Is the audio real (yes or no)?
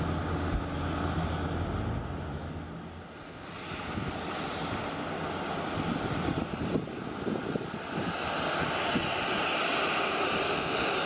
yes